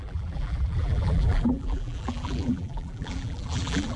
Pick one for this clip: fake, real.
fake